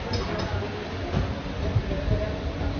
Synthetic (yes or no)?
no